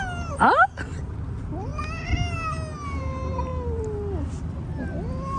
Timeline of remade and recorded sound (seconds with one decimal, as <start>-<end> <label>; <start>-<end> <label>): 0.0-5.4 recorded